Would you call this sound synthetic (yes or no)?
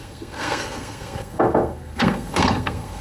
yes